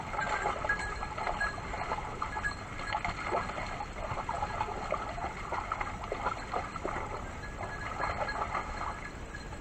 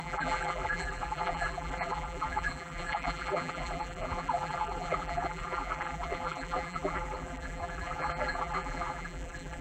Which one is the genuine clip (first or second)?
first